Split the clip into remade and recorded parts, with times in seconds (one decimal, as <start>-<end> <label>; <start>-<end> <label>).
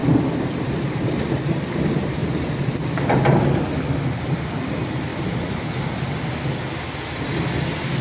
0.0-1.8 remade; 1.8-2.2 recorded; 2.2-3.0 remade; 3.0-8.0 recorded